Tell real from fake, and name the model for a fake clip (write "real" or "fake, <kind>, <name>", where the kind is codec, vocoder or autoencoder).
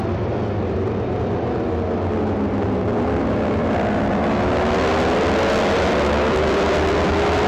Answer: real